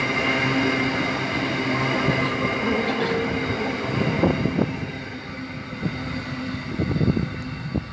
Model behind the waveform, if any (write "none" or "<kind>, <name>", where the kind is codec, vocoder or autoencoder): none